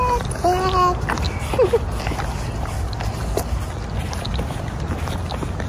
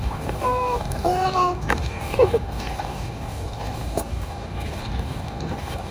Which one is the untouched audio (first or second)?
first